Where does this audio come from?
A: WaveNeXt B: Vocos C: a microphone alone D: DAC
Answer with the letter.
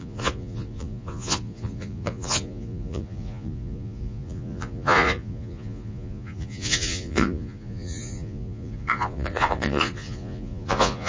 B